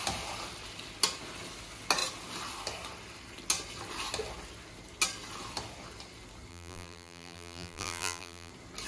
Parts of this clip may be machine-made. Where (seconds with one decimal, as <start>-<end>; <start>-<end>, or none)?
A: 6.5-8.5